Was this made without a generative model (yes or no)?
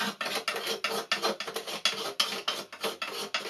yes